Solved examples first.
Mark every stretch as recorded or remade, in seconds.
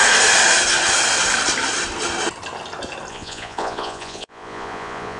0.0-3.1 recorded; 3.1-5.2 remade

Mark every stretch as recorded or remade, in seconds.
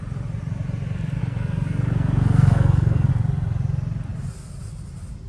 0.0-1.2 recorded; 1.2-3.1 remade; 3.1-5.3 recorded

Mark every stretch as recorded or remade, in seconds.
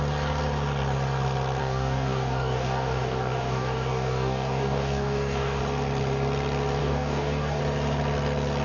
0.0-1.6 recorded; 1.6-5.6 remade; 5.6-6.8 recorded; 6.8-7.6 remade; 7.6-8.6 recorded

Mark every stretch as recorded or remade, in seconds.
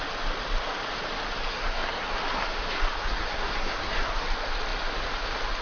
0.0-1.5 recorded; 1.5-2.2 remade; 2.2-3.0 recorded; 3.0-4.3 remade; 4.3-5.6 recorded